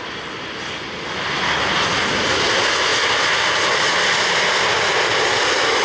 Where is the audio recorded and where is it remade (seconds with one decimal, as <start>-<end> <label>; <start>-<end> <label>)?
0.0-5.8 recorded